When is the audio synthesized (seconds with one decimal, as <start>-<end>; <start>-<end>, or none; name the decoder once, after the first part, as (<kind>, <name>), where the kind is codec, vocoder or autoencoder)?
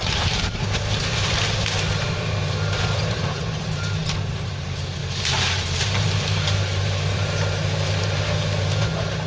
0.0-4.5 (vocoder, BigVGAN v2); 5.0-8.2